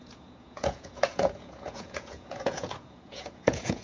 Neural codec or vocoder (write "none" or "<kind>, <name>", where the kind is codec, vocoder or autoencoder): vocoder, Vocos